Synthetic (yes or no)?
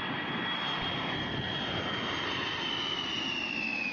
no